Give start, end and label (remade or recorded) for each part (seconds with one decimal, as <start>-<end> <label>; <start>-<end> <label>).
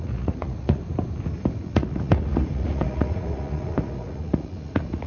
0.0-0.8 remade; 0.8-1.6 recorded; 1.6-5.1 remade